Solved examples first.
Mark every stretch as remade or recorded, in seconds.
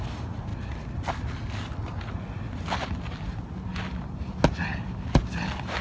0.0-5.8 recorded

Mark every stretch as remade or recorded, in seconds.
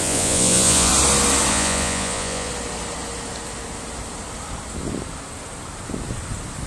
0.0-0.9 remade; 0.9-1.5 recorded; 1.5-2.5 remade; 2.5-6.7 recorded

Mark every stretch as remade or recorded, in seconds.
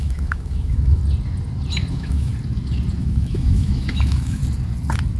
0.0-1.0 remade; 1.0-1.9 recorded; 1.9-2.3 remade; 2.3-3.0 recorded; 3.0-4.4 remade; 4.4-5.2 recorded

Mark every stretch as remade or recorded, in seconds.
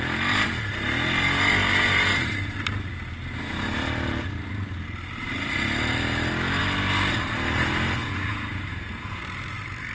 0.0-8.0 recorded; 8.0-9.2 remade; 9.2-9.9 recorded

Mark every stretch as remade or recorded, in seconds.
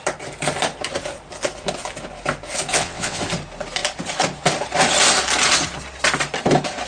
0.0-2.7 recorded; 2.7-3.2 remade; 3.2-6.9 recorded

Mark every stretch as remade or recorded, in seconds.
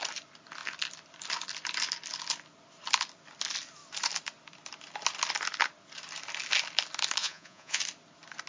0.0-7.2 recorded; 7.2-7.8 remade; 7.8-8.5 recorded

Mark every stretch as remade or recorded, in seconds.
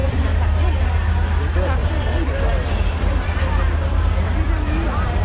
0.0-0.7 remade; 0.7-1.8 recorded; 1.8-5.2 remade